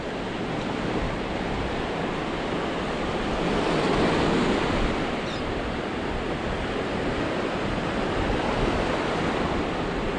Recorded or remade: recorded